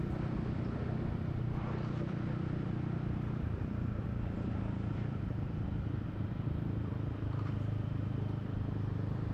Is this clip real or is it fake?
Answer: fake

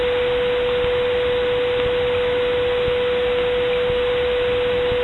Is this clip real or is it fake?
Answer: real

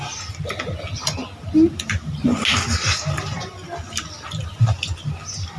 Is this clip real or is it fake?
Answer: real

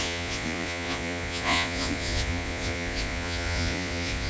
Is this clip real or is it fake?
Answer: fake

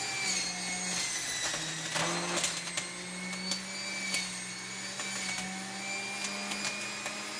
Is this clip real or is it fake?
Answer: real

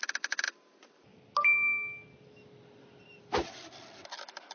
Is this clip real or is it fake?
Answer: real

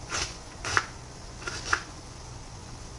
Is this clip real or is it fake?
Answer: fake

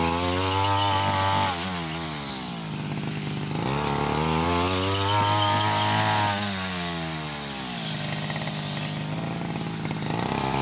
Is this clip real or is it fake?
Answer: real